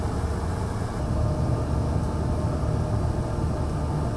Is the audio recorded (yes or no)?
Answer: yes